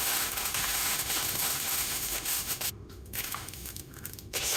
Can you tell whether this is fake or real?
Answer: fake